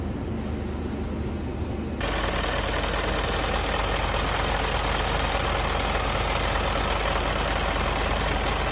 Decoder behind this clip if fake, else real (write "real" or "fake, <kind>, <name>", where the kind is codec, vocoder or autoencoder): real